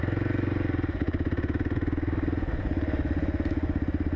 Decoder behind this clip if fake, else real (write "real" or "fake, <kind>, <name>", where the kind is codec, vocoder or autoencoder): real